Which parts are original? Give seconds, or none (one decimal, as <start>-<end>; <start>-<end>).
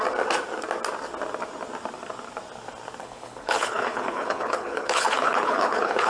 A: 0.0-3.0